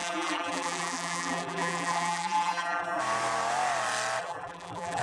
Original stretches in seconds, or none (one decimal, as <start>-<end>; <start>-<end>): 3.0-4.2